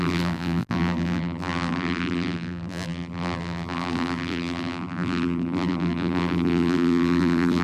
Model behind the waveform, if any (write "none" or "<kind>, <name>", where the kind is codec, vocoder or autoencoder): vocoder, BigVGAN v2